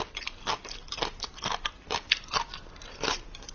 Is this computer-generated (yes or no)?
no